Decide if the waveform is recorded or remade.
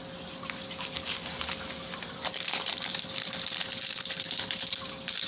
recorded